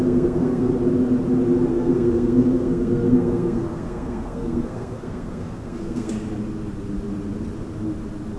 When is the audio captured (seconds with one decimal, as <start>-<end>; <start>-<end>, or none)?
0.7-1.7; 6.1-8.4